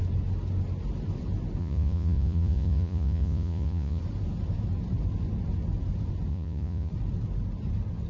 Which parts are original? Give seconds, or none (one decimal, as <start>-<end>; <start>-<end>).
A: 0.0-1.6; 4.0-6.3; 6.9-8.1